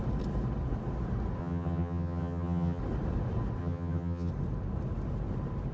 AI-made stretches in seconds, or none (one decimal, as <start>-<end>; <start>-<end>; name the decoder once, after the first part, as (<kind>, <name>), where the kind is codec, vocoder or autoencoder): 1.4-2.8 (vocoder, HiFi-GAN); 3.6-4.3